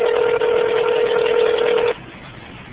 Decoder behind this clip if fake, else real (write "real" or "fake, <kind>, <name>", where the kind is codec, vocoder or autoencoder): real